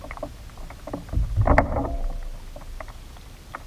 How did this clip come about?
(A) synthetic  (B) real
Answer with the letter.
B